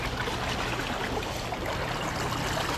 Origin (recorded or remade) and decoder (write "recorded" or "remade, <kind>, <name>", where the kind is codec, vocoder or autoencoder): recorded